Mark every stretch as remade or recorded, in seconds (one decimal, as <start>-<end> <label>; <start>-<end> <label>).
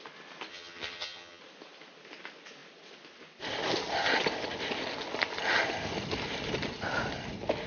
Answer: 0.0-0.5 recorded; 0.5-1.4 remade; 1.4-7.7 recorded